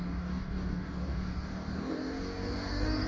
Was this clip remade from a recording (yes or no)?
yes